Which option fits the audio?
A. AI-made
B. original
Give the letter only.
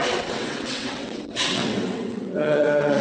A